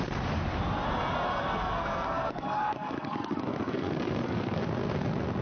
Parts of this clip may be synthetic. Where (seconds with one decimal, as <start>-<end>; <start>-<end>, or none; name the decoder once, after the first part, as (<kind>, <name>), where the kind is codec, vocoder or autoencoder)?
1.4-4.6 (codec, SNAC)